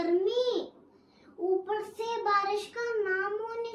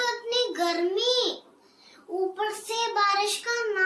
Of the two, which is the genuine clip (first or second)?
second